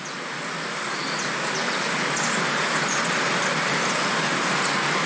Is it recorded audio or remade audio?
recorded